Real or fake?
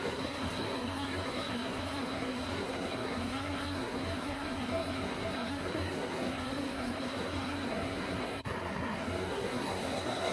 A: fake